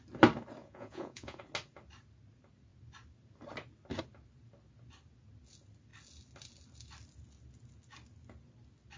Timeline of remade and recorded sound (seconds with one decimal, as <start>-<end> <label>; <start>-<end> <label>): 0.0-0.6 recorded; 0.6-1.4 remade; 1.4-9.0 recorded